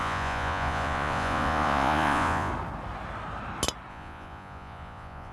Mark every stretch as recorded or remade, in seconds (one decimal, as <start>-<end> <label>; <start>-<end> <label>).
0.0-2.5 remade; 2.5-3.9 recorded; 3.9-5.3 remade